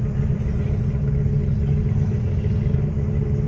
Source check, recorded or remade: recorded